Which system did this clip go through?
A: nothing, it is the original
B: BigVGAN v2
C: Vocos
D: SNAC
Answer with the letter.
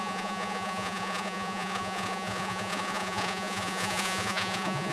C